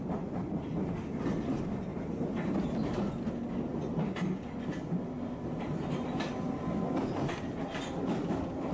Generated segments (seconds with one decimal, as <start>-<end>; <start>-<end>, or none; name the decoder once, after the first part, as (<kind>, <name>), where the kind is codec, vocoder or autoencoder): 1.9-3.1 (vocoder, BigVGAN v2)